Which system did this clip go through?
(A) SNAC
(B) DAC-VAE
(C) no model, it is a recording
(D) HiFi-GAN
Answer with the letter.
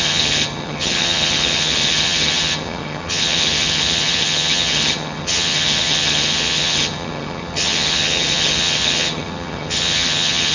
D